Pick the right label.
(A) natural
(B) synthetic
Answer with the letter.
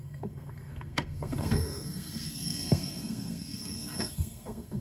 B